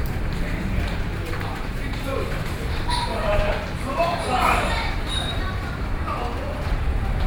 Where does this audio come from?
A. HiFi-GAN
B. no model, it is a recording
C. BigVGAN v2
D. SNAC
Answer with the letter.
C